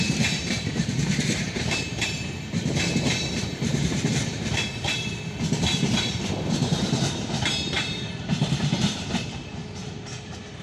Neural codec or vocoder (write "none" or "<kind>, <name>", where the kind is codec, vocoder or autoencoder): vocoder, BigVGAN v2